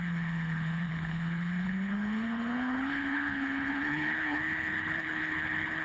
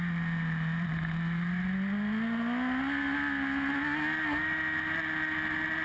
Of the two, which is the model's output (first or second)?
first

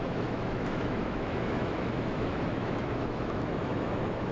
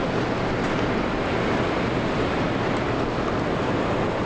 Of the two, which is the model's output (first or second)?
first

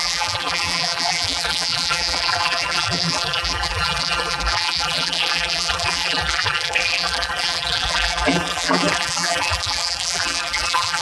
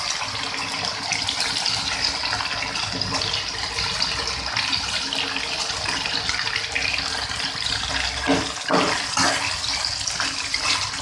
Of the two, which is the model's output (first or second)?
first